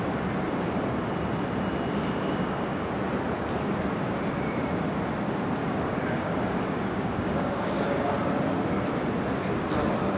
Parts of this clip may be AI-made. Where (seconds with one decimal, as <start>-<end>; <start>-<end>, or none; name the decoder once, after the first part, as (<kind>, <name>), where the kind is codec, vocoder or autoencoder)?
1.9-2.9 (codec, DAC); 5.6-8.1

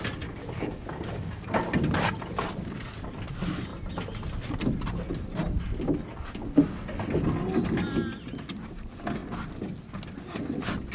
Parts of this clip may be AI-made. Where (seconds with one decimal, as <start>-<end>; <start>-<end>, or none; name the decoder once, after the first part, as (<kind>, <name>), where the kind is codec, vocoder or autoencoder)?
0.4-1.5 (codec, DAC)

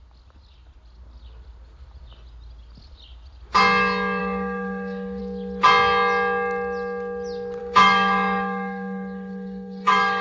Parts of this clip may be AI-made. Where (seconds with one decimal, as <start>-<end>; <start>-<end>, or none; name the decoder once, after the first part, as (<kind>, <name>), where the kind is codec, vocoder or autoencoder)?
4.2-5.2 (codec, DAC); 7.6-10.2

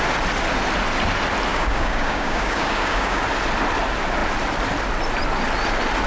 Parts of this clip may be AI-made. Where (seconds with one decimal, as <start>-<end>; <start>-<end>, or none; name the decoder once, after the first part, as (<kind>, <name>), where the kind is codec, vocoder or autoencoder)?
1.5-3.2 (codec, DAC)